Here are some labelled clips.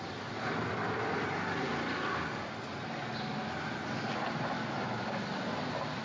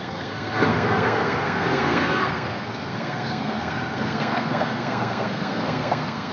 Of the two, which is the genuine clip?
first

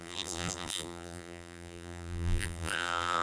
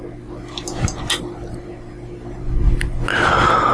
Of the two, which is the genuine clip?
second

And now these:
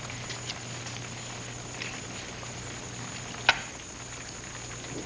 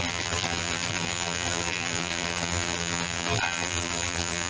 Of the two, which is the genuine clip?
first